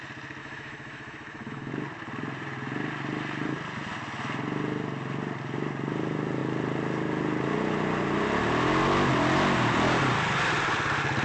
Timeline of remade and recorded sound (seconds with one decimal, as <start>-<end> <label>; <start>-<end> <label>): 0.0-0.4 recorded; 0.4-1.7 remade; 1.7-11.2 recorded

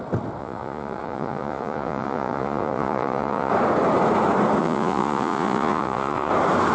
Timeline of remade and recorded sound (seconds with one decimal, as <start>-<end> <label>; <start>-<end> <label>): 0.0-0.4 recorded; 0.4-3.5 remade; 3.5-4.6 recorded; 4.6-6.3 remade; 6.3-6.7 recorded

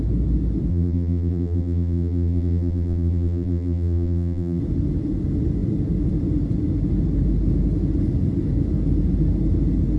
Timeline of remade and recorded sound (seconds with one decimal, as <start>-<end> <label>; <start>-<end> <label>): 0.0-0.7 recorded; 0.7-4.6 remade; 4.6-10.0 recorded

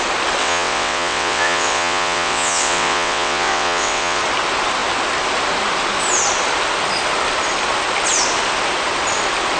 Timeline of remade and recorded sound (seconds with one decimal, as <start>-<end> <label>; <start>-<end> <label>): 0.0-0.4 recorded; 0.4-4.2 remade; 4.2-9.6 recorded

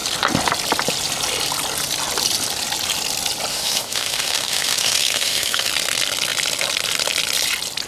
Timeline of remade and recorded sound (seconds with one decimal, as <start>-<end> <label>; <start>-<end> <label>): 0.0-3.5 recorded; 3.5-5.7 remade; 5.7-7.9 recorded

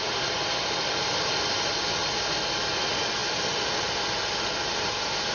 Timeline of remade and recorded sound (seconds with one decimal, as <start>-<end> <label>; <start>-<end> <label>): 0.0-5.3 recorded

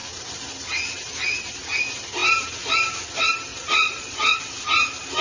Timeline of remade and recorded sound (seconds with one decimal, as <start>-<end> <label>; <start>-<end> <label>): 0.0-3.5 recorded; 3.5-4.4 remade; 4.4-5.2 recorded

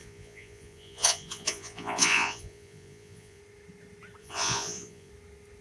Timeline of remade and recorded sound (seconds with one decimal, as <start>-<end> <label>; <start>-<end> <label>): 0.0-3.4 remade; 3.4-4.2 recorded; 4.2-5.1 remade; 5.1-5.6 recorded